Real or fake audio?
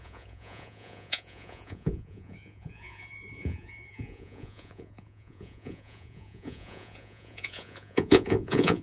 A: fake